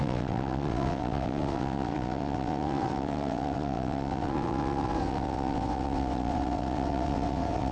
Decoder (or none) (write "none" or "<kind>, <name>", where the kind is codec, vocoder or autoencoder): vocoder, WaveNeXt